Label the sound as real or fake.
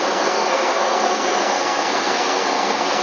fake